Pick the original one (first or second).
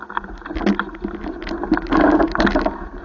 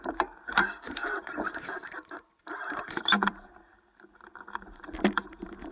first